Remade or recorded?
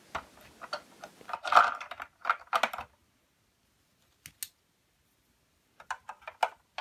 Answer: recorded